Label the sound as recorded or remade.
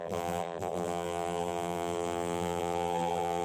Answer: remade